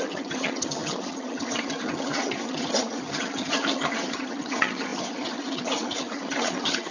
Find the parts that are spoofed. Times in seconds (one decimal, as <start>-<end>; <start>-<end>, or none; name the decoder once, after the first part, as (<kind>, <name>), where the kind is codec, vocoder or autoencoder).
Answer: 0.0-6.9 (vocoder, HiFi-GAN)